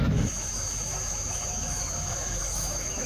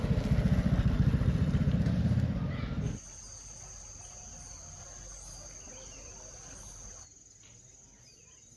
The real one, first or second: second